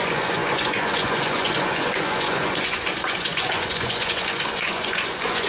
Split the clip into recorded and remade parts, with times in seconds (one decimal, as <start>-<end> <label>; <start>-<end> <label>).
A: 0.0-5.5 remade